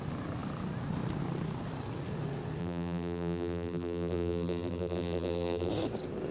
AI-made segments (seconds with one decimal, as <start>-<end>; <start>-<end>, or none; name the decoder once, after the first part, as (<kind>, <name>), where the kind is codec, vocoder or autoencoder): 2.6-5.7 (vocoder, BigVGAN v2)